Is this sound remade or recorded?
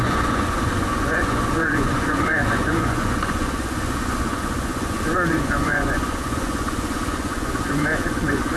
remade